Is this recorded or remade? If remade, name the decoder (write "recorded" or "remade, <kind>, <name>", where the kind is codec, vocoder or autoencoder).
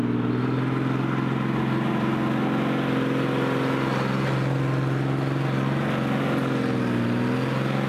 recorded